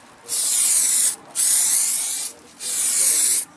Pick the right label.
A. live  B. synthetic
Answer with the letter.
A